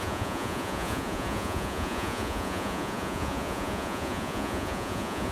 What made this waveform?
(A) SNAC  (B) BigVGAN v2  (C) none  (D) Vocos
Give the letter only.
D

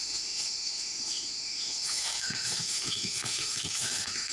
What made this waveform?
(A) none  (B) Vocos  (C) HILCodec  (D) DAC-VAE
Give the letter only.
D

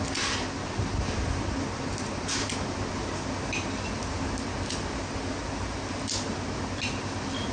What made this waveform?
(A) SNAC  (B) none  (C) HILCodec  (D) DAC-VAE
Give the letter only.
B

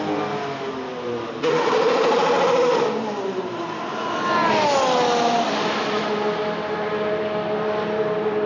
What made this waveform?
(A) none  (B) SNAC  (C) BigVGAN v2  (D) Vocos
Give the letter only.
A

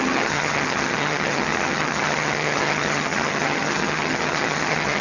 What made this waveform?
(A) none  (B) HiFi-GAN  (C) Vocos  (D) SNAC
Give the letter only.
B